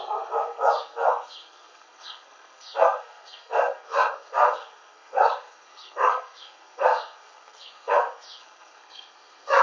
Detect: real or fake fake